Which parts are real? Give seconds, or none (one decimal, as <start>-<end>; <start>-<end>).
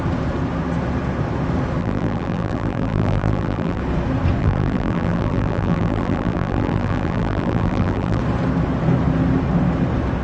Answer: 0.0-1.8; 3.8-4.4; 8.2-10.2